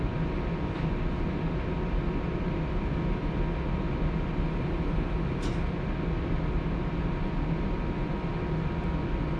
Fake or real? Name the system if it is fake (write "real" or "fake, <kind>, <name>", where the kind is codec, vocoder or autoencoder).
real